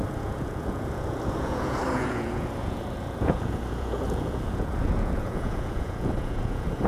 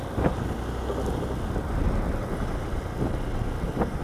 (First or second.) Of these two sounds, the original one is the second